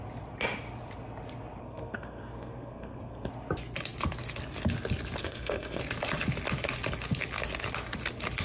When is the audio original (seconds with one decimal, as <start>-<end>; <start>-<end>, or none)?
0.0-1.6; 3.3-5.2; 5.8-8.4